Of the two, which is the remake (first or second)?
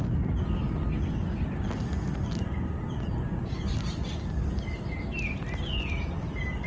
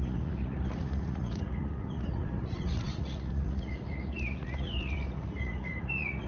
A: second